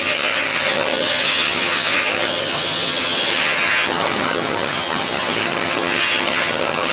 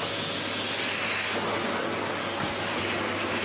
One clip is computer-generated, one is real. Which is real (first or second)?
second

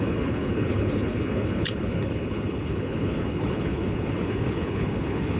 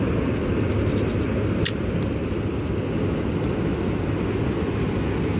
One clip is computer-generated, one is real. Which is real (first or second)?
second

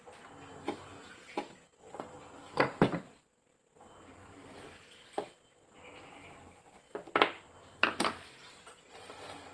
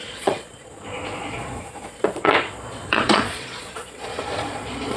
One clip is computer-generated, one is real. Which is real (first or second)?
first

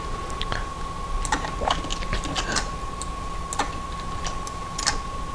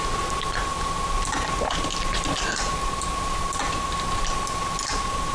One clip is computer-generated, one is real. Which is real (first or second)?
first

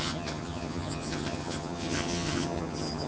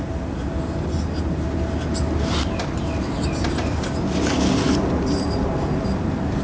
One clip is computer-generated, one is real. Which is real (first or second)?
second